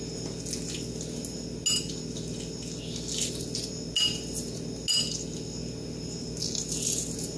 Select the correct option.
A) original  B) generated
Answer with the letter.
A